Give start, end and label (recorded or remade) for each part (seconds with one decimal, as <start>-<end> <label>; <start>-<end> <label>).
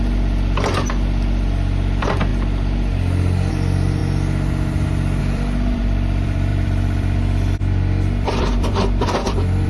0.0-2.3 remade; 2.3-3.5 recorded; 3.5-4.0 remade; 4.0-5.2 recorded; 5.2-9.7 remade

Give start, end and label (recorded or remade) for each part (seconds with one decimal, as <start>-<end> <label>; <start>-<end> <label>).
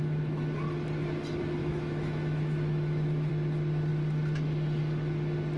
0.0-1.6 recorded; 1.6-3.3 remade; 3.3-5.6 recorded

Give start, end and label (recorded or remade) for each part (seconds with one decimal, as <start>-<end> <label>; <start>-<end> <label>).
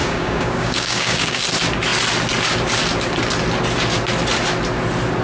0.0-1.4 remade; 1.4-5.2 recorded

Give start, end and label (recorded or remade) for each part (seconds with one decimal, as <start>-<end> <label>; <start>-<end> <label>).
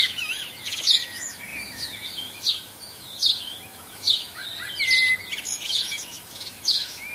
0.0-4.4 remade; 4.4-5.4 recorded; 5.4-7.1 remade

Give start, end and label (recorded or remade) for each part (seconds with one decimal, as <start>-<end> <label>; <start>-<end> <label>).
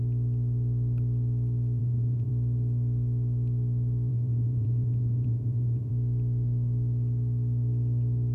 0.0-1.8 recorded; 1.8-2.3 remade; 2.3-4.1 recorded; 4.1-5.9 remade; 5.9-8.3 recorded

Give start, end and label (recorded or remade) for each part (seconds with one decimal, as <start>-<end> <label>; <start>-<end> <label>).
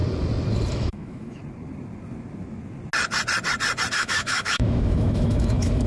0.0-0.7 recorded; 0.7-1.4 remade; 1.4-3.9 recorded; 3.9-5.9 remade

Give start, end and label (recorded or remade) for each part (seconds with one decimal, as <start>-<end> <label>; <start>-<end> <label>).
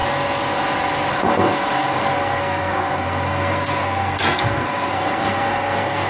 0.0-1.1 recorded; 1.1-6.1 remade